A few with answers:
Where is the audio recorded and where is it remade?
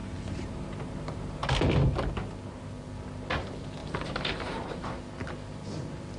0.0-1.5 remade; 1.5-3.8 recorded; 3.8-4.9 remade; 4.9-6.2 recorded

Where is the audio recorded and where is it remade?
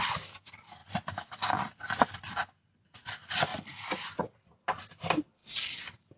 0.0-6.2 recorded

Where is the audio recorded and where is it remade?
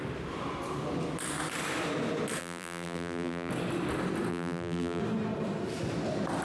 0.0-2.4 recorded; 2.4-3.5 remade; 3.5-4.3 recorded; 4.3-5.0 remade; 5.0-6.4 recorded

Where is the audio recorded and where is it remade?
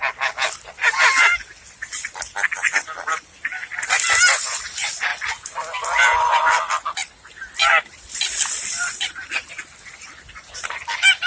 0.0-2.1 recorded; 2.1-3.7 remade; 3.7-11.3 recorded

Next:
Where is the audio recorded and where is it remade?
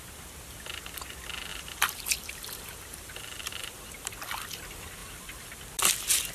0.0-1.5 recorded; 1.5-3.9 remade; 3.9-5.0 recorded; 5.0-5.5 remade; 5.5-6.3 recorded